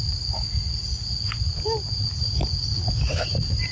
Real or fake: real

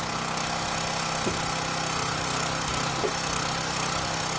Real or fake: real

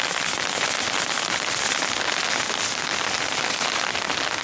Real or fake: real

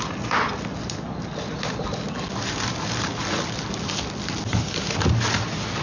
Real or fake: real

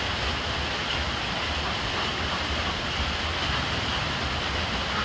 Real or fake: real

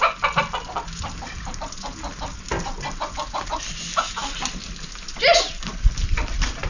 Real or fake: real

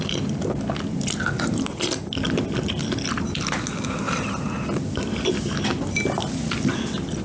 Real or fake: real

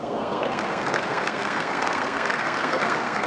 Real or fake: fake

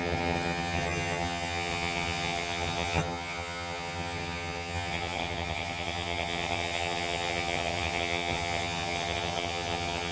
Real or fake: fake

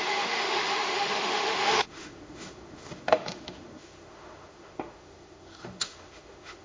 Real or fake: fake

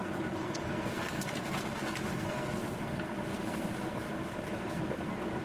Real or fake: fake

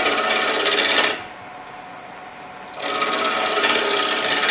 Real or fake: real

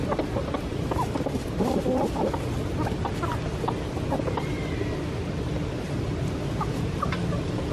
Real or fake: real